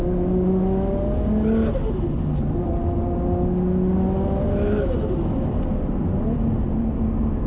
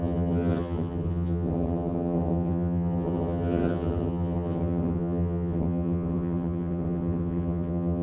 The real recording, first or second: first